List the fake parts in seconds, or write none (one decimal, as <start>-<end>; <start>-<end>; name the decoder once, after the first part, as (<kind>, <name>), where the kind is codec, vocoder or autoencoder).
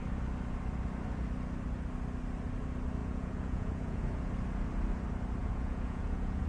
3.0-4.3 (vocoder, Vocos); 5.4-6.5